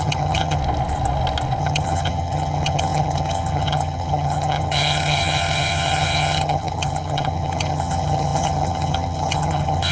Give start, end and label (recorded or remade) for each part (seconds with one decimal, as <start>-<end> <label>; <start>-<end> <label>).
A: 0.0-0.6 remade; 0.6-1.6 recorded; 1.6-9.9 remade